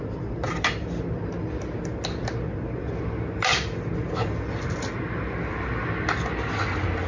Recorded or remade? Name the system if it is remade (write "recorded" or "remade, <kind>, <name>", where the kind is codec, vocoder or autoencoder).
recorded